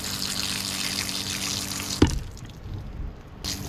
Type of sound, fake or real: real